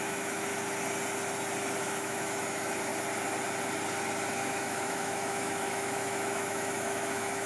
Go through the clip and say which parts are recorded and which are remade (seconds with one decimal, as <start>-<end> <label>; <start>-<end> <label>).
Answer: 0.0-0.5 remade; 0.5-1.8 recorded; 1.8-2.9 remade; 2.9-4.3 recorded; 4.3-7.5 remade